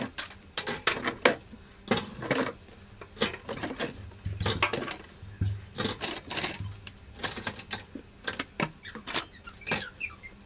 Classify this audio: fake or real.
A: real